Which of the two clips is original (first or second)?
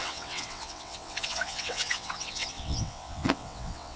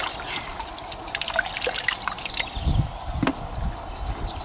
second